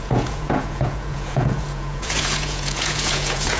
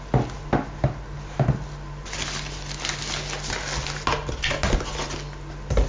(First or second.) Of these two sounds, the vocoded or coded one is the first